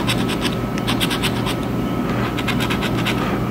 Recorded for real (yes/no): yes